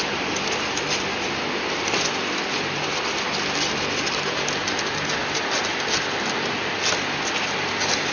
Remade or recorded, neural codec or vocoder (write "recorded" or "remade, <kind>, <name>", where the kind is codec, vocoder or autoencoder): recorded